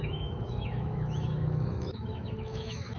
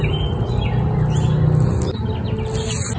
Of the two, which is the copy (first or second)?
first